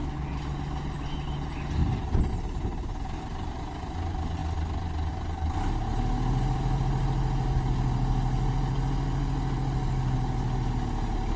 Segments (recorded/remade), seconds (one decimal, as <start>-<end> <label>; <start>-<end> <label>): 0.0-1.8 recorded; 1.8-2.3 remade; 2.3-11.4 recorded